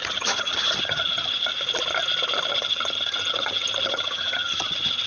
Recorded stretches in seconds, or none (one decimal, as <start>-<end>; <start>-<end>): 1.5-2.5